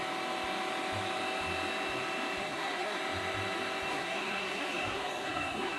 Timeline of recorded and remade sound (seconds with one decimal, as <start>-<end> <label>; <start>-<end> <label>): 0.0-2.4 recorded; 2.4-3.0 remade; 3.0-3.9 recorded; 3.9-5.8 remade